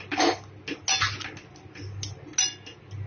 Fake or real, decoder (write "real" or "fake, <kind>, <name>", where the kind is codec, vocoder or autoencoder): real